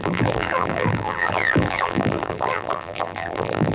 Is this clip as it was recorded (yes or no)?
no